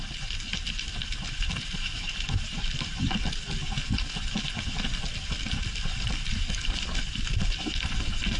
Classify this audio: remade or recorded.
recorded